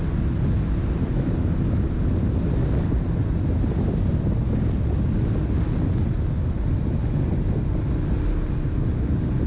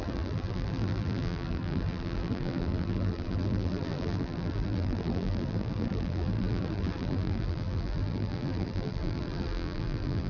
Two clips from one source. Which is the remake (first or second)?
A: second